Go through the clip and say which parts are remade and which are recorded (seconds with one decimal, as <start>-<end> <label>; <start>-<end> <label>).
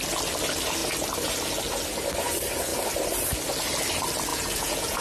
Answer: 0.0-4.3 recorded; 4.3-5.0 remade